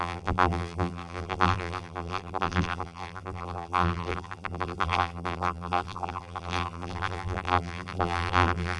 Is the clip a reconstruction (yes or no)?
yes